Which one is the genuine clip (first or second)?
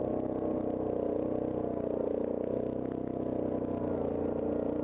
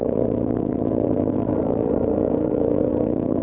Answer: first